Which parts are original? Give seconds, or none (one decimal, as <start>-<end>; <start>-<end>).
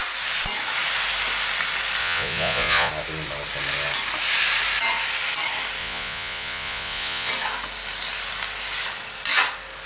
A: 0.0-2.0; 2.9-5.8; 7.3-9.9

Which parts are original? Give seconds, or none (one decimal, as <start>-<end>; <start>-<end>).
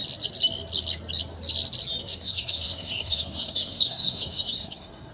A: 0.0-2.0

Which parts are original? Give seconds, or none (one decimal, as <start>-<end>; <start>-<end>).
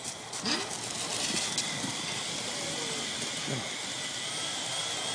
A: 0.0-5.1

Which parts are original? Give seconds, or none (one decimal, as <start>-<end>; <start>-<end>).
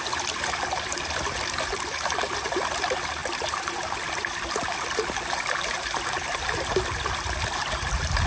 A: 0.0-8.3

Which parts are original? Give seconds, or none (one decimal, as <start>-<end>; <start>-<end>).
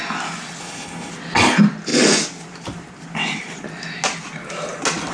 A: 0.0-0.6; 1.1-5.1